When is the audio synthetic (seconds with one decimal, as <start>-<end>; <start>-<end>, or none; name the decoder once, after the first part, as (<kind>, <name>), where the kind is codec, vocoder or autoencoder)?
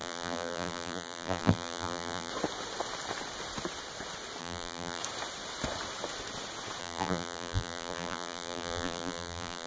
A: 0.0-2.3 (vocoder, BigVGAN v2); 4.4-5.0; 6.8-9.7